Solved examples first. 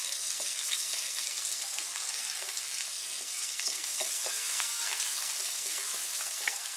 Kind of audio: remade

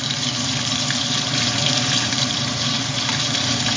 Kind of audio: remade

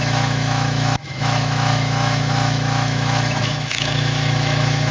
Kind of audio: remade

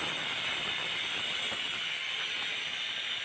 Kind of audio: recorded